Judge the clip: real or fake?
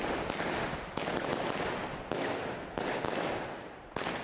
real